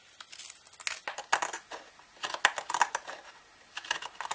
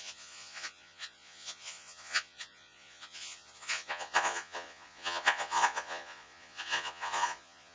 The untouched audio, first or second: first